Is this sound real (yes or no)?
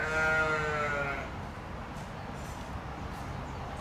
yes